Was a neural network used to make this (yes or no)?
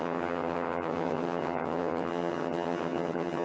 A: yes